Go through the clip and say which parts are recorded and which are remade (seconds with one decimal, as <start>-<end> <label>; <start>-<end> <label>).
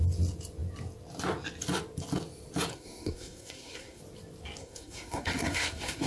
0.0-2.7 recorded; 2.7-4.0 remade; 4.0-4.6 recorded; 4.6-6.1 remade